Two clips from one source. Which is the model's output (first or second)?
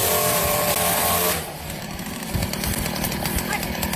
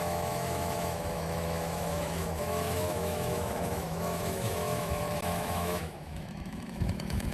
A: second